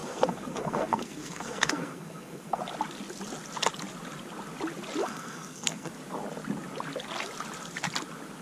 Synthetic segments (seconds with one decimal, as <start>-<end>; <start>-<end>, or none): 0.0-2.6; 5.0-5.9